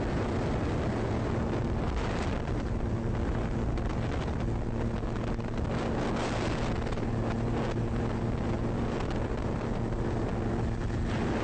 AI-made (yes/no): no